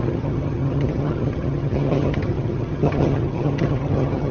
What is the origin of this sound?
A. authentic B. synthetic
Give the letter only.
B